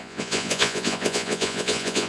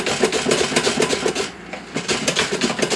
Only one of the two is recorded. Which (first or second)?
second